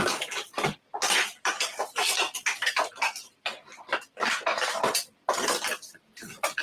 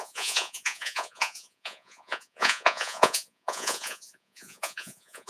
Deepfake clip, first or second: second